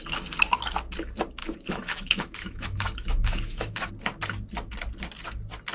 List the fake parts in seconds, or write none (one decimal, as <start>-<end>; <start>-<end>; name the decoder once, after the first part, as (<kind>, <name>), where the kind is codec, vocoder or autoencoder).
1.4-3.9 (autoencoder, DAC-VAE)